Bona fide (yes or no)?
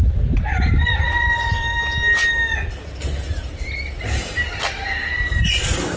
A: yes